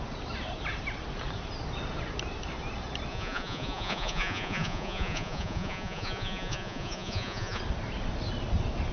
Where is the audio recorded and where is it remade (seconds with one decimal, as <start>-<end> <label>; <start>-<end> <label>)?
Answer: 0.0-3.1 recorded; 3.1-7.6 remade; 7.6-8.9 recorded